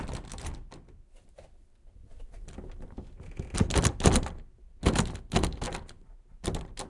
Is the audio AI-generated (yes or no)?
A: no